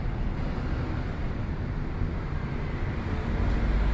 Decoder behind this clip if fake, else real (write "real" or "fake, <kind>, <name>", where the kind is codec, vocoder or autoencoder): real